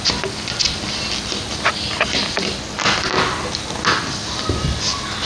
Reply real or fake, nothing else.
real